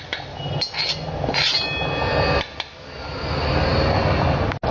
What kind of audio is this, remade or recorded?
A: recorded